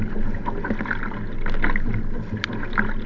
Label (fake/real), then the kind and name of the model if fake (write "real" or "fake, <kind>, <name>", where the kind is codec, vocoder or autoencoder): real